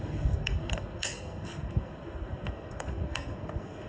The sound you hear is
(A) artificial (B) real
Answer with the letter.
A